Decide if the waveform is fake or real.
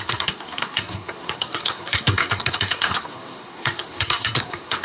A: fake